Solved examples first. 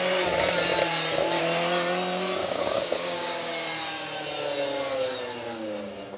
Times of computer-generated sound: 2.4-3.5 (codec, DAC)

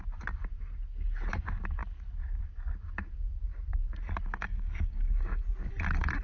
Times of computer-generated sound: 4.4-5.4 (codec, DAC)

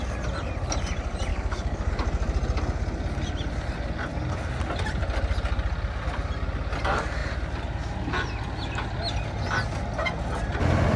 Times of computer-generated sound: 1.3-1.9 (codec, DAC)

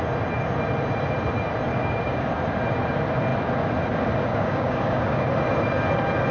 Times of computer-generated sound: 1.7-2.3 (codec, DAC); 4.3-5.3

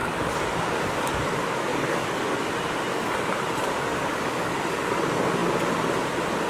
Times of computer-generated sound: 0.0-1.2 (codec, DAC); 1.7-2.5; 2.9-4.9

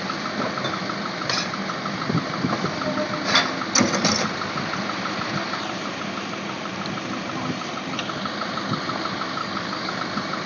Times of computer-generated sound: 9.4-9.9 (codec, DAC)

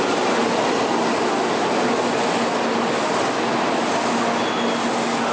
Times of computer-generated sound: none